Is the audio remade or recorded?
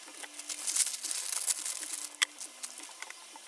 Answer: recorded